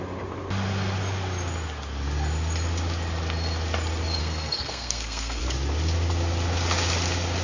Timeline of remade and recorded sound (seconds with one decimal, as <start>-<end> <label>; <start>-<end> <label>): 0.0-4.2 recorded; 4.2-5.4 remade; 5.4-7.4 recorded